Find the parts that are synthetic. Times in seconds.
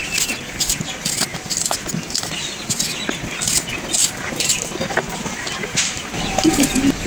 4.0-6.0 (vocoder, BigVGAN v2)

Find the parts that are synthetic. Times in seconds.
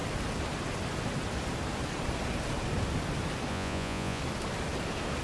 3.5-4.2 (vocoder, Vocos)